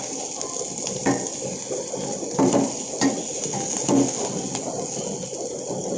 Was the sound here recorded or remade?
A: recorded